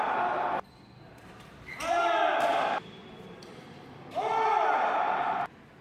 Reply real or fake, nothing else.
fake